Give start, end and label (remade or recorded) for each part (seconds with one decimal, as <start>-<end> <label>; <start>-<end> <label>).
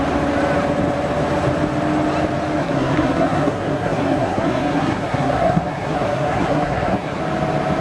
0.0-2.6 recorded; 2.6-7.2 remade; 7.2-7.8 recorded